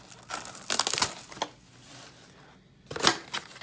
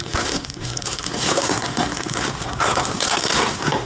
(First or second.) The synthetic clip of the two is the second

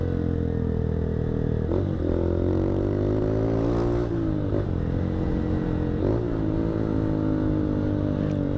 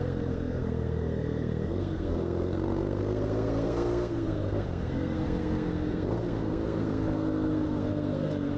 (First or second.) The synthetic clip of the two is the second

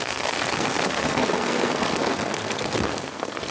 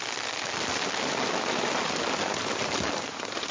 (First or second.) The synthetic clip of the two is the first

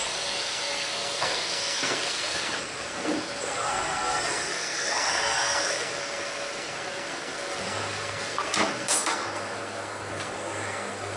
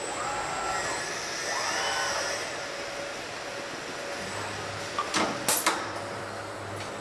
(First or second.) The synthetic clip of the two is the first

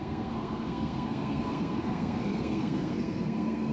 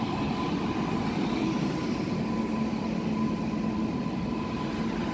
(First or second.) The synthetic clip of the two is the first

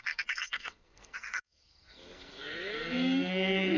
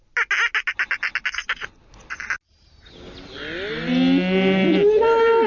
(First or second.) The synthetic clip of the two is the first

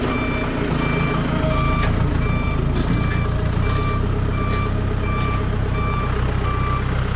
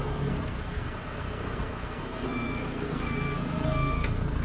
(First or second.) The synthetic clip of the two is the second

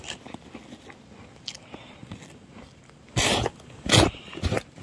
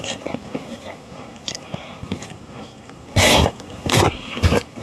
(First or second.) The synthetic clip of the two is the second